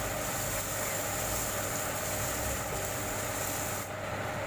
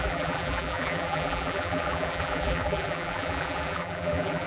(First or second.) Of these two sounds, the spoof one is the second